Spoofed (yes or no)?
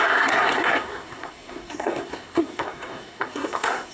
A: yes